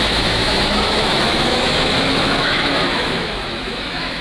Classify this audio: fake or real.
fake